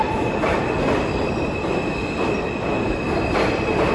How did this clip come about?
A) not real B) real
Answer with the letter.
B